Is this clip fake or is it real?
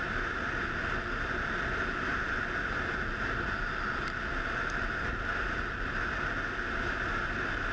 real